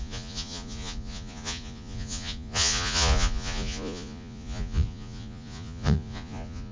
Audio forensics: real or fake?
fake